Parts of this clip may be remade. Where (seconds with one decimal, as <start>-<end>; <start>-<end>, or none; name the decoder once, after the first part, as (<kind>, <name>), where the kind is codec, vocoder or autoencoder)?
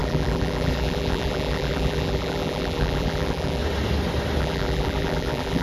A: 0.0-3.6 (vocoder, BigVGAN v2); 4.4-5.6